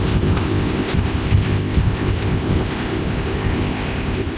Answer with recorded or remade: remade